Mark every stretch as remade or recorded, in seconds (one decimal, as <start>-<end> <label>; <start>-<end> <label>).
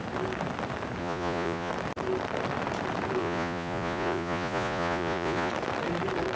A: 0.0-1.0 recorded; 1.0-1.7 remade; 1.7-3.2 recorded; 3.2-5.5 remade; 5.5-6.4 recorded